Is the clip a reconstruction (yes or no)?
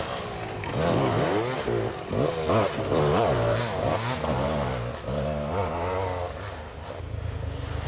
no